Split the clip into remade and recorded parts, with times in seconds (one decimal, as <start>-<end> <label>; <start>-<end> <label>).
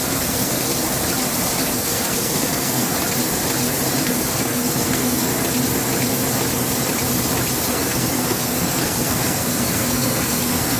0.0-0.7 remade; 0.7-1.6 recorded; 1.6-2.9 remade; 2.9-4.0 recorded; 4.0-5.3 remade; 5.3-7.7 recorded; 7.7-10.8 remade